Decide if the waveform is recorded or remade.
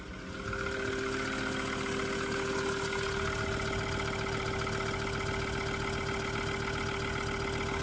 recorded